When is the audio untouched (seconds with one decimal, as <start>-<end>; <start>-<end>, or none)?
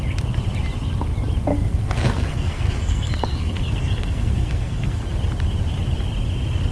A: 0.0-1.5; 5.0-6.7